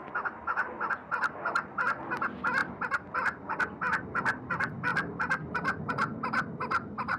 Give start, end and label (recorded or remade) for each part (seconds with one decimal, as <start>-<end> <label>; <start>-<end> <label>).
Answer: 0.0-2.6 recorded; 2.6-3.6 remade; 3.6-7.2 recorded